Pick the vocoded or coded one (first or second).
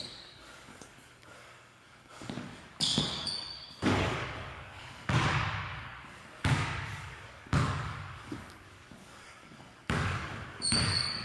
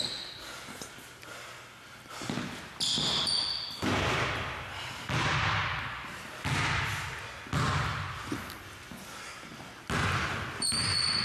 first